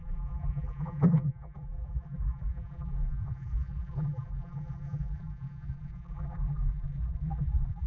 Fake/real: fake